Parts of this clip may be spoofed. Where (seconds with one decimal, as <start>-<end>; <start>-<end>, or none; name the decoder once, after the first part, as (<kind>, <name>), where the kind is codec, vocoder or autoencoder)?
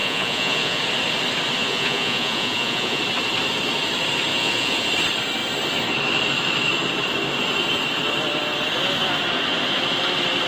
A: 0.0-0.8 (vocoder, Vocos); 1.6-3.0; 4.3-4.9